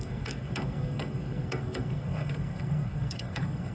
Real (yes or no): no